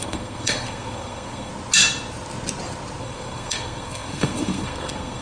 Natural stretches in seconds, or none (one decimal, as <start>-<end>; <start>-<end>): 1.5-3.0